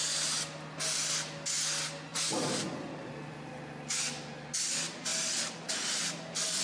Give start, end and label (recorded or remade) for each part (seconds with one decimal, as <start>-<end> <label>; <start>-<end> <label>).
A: 0.0-2.1 recorded; 2.1-3.5 remade; 3.5-5.1 recorded; 5.1-6.6 remade